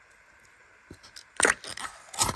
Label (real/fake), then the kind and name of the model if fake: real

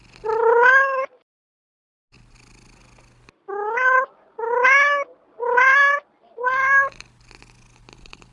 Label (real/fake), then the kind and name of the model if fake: real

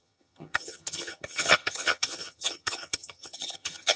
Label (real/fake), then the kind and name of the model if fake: fake, vocoder, HiFi-GAN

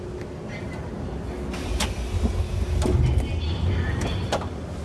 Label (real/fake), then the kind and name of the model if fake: real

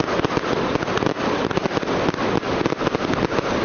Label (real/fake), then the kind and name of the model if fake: real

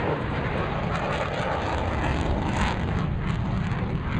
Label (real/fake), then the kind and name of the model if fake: real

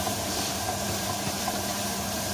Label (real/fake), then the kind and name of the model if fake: fake, vocoder, BigVGAN v2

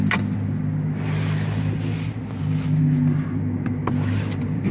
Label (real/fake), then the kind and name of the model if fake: real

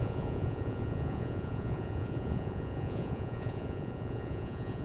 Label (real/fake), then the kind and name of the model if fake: fake, vocoder, Vocos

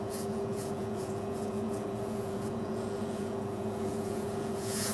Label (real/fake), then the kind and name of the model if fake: fake, vocoder, Vocos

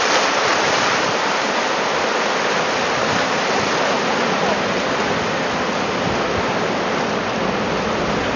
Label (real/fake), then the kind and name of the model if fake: real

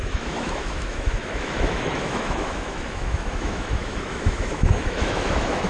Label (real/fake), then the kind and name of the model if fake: fake, autoencoder, DAC-VAE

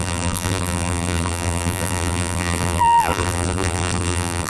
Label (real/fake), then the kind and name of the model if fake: fake, vocoder, BigVGAN v2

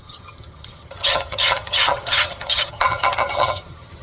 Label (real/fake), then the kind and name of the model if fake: fake, vocoder, HiFi-GAN